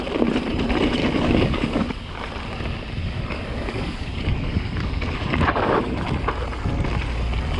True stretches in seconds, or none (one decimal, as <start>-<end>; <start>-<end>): 0.0-1.0; 2.3-3.0; 6.0-7.6